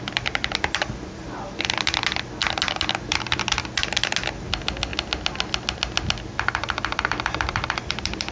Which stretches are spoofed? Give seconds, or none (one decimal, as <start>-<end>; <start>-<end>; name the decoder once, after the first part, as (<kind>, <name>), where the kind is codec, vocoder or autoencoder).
none